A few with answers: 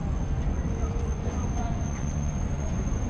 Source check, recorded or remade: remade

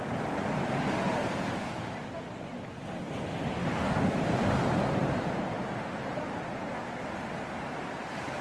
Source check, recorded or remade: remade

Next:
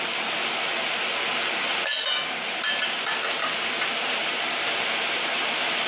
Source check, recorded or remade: recorded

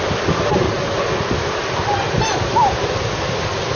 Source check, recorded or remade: recorded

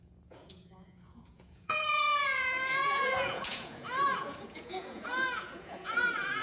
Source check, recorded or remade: remade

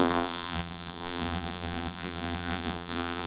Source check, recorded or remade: remade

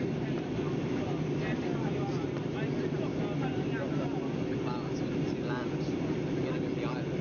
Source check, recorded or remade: recorded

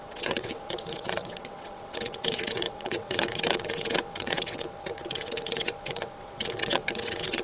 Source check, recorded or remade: remade